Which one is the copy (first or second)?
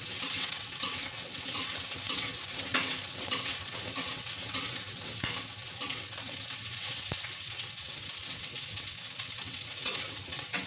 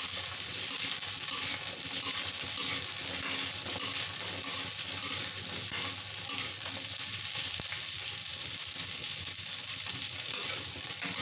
first